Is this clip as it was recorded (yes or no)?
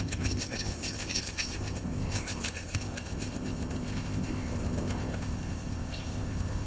no